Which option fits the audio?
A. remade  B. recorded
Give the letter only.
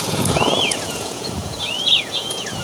A